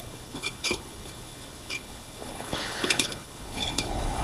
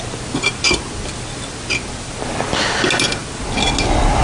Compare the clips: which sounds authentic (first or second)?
second